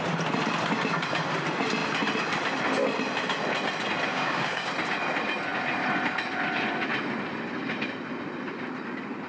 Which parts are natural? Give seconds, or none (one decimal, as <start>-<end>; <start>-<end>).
0.0-4.1; 4.7-9.3